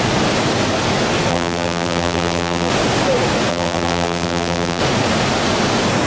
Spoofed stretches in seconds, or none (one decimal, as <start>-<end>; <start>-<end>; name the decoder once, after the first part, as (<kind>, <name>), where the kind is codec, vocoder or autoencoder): 1.3-2.7 (vocoder, BigVGAN v2); 3.5-4.8